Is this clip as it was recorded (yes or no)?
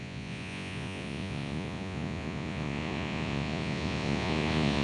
no